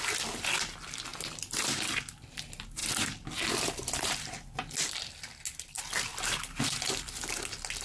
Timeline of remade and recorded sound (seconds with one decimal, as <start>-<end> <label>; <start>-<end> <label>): 0.0-1.1 recorded; 1.1-2.1 remade; 2.1-2.8 recorded; 2.8-4.9 remade; 4.9-7.8 recorded

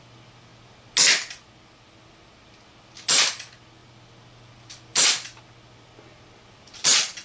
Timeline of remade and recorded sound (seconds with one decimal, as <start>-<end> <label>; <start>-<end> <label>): 0.0-7.2 recorded

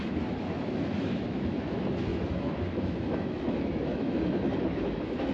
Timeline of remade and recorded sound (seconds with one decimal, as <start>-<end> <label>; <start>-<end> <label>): 0.0-5.3 remade

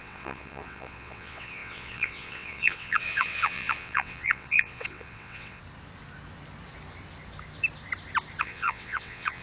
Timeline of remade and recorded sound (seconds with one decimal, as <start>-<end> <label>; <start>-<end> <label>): 0.0-5.6 remade; 5.6-8.4 recorded; 8.4-9.4 remade

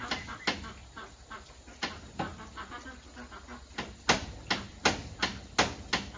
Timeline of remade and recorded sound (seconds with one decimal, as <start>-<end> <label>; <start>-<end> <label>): 0.0-6.2 recorded